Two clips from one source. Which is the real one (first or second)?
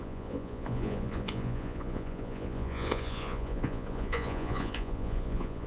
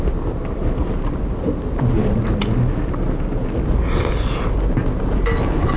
second